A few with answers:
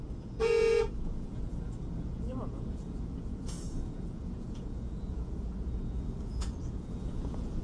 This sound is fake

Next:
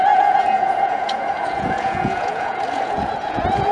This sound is fake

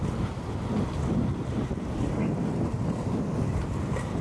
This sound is real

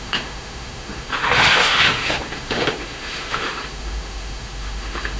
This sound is fake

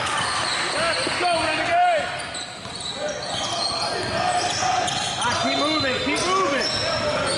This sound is real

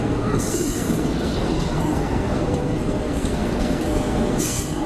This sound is fake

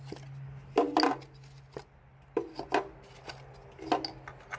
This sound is real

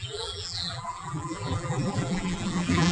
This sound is fake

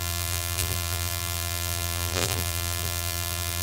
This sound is fake